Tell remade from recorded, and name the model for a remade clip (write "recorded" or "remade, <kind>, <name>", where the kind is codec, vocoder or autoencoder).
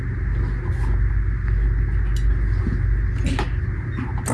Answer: recorded